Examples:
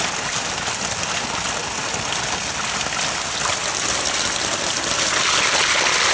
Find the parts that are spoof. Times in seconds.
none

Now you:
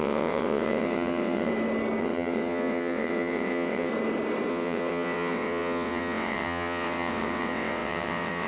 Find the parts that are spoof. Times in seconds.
0.0-1.5 (vocoder, WaveNeXt); 2.0-3.9; 4.5-8.5

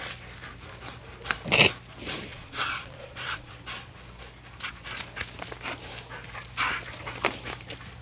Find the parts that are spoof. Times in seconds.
2.3-3.5 (vocoder, Vocos)

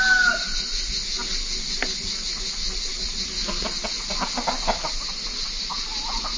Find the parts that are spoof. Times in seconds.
none

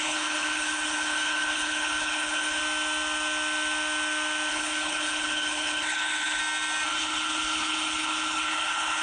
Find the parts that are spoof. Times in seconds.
0.0-2.6 (codec, HILCodec); 4.5-6.4; 6.9-9.0

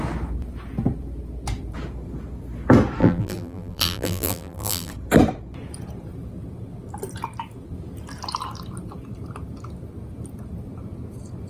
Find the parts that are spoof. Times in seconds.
3.0-4.9 (vocoder, BigVGAN v2)

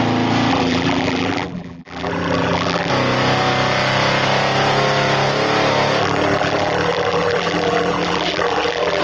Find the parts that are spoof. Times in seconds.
0.5-2.9 (vocoder, BigVGAN v2); 6.0-9.0